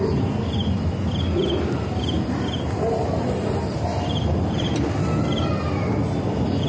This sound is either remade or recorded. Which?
recorded